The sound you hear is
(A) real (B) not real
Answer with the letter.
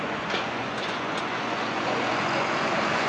B